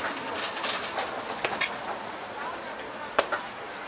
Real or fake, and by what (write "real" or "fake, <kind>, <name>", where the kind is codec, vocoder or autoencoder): real